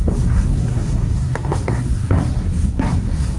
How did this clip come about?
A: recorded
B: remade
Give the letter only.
B